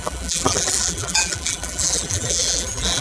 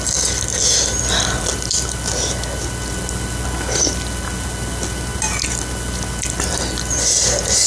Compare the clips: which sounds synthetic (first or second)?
first